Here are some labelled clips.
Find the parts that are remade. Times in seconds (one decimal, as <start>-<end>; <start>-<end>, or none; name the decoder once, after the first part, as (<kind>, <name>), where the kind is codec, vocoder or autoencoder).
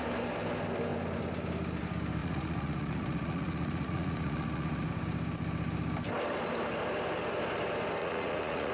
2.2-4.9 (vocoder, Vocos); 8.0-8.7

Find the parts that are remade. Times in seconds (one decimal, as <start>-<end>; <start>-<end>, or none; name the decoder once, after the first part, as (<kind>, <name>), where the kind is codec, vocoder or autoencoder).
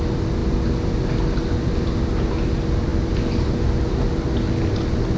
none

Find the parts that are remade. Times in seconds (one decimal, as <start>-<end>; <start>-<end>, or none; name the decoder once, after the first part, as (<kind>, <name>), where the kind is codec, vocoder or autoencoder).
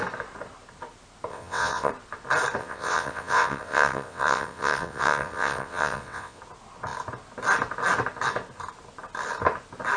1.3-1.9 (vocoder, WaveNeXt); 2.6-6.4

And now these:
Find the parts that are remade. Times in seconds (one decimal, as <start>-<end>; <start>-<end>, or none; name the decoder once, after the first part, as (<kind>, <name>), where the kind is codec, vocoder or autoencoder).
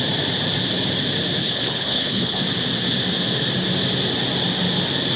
1.4-2.4 (codec, HILCodec)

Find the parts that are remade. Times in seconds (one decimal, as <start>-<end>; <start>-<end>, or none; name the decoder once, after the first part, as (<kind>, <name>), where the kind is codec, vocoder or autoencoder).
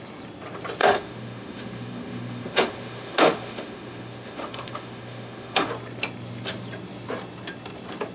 0.8-5.7 (autoencoder, DAC-VAE)